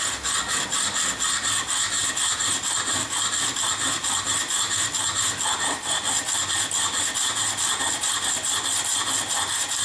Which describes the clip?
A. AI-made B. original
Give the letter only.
B